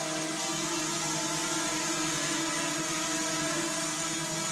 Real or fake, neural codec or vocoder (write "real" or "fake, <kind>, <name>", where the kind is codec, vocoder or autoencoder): real